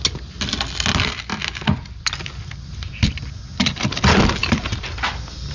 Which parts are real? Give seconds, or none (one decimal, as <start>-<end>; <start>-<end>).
0.0-0.9; 3.6-5.5